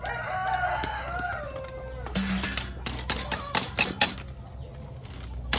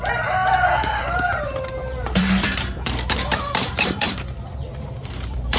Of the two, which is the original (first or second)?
first